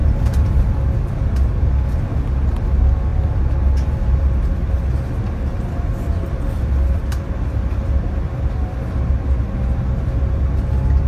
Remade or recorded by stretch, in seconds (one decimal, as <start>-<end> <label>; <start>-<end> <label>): 0.0-0.5 remade; 0.5-5.5 recorded; 5.5-9.1 remade; 9.1-11.1 recorded